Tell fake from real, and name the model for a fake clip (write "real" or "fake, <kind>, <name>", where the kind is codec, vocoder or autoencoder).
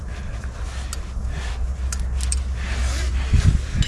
real